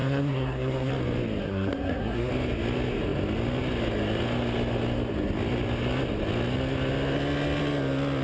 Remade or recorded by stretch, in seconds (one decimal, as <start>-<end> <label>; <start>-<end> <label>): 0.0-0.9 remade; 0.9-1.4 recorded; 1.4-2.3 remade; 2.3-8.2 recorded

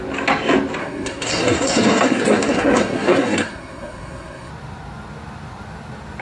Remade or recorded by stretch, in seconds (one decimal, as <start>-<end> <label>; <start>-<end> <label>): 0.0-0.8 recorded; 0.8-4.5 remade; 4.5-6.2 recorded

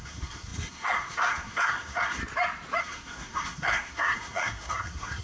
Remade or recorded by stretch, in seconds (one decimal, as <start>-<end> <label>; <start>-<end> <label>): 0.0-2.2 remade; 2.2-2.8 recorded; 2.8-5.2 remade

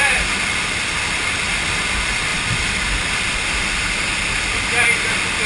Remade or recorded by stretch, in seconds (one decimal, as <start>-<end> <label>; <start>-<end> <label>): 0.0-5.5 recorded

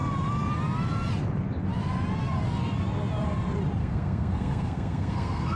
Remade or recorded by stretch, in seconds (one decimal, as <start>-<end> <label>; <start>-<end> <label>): 0.0-3.8 recorded; 3.8-5.6 remade

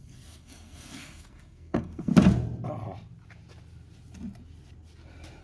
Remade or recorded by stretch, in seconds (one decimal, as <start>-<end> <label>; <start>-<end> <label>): 0.0-2.1 remade; 2.1-5.4 recorded

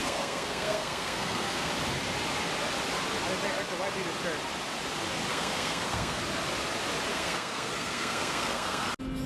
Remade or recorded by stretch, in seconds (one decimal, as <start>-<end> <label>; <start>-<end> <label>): 0.0-1.7 remade; 1.7-5.3 recorded; 5.3-6.2 remade; 6.2-7.1 recorded; 7.1-8.9 remade; 8.9-9.3 recorded